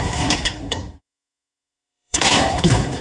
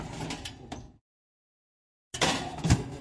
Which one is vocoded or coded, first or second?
first